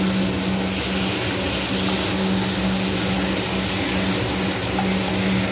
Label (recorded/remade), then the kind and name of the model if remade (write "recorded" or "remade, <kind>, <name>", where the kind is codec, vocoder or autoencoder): recorded